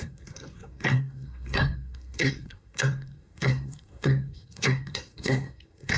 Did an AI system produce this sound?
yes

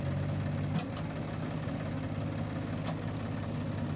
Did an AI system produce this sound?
no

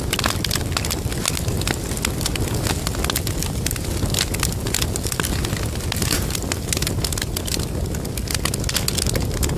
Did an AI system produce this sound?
no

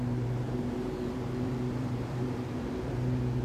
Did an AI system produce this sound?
yes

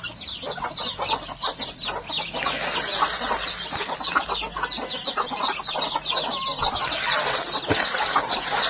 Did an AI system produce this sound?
no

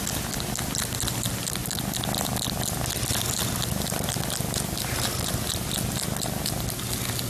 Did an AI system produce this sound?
no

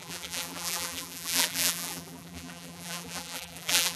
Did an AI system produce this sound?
yes